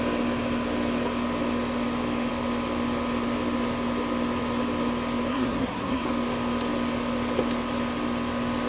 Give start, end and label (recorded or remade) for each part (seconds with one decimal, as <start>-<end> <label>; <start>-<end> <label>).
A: 0.0-5.3 recorded; 5.3-6.1 remade; 6.1-8.7 recorded